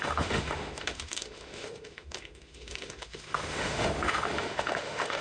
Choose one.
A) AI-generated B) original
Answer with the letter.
A